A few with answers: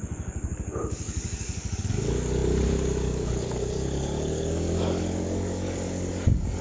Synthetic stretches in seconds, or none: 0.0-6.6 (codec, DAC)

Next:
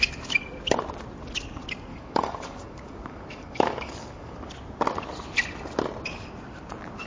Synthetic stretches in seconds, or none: 1.9-4.5 (codec, DAC)

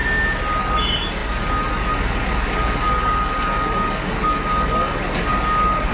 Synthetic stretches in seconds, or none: 0.6-5.9 (codec, DAC)

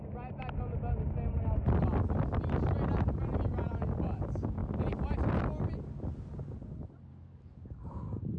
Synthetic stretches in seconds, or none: 7.1-8.4 (codec, DAC)

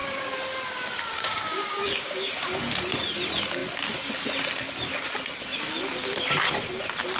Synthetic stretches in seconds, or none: 1.1-2.3 (codec, DAC)

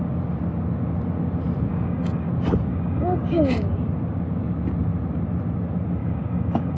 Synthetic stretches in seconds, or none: 1.7-2.3 (codec, DAC); 2.7-3.6; 6.0-6.8

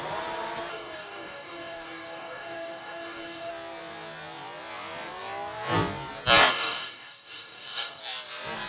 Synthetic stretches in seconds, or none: 0.7-3.5 (codec, DAC); 6.5-8.0

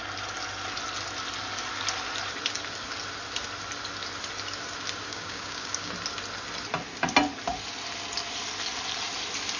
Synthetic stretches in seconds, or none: 5.1-5.9 (codec, DAC)